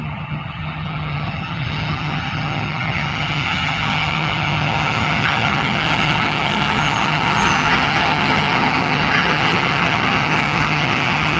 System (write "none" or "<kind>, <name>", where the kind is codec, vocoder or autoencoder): vocoder, HiFi-GAN